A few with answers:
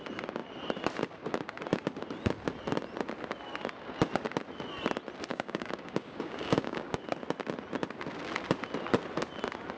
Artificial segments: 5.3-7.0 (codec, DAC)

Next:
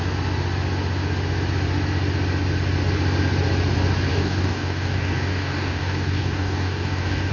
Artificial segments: 4.1-7.3 (codec, DAC)

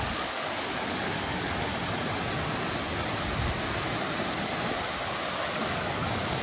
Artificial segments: 0.0-1.7 (codec, DAC); 5.5-6.4

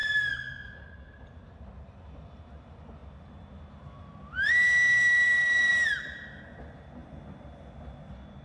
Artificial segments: none

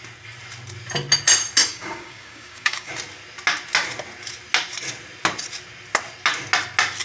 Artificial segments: 1.7-2.9 (codec, DAC)

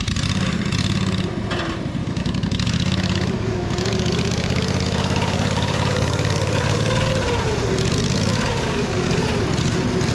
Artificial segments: 2.0-7.1 (codec, DAC); 8.3-9.2

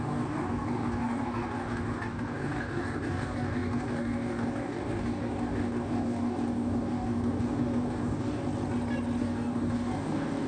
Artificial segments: 0.0-8.4 (codec, DAC); 9.2-10.5